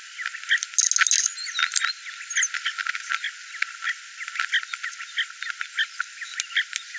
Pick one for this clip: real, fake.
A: real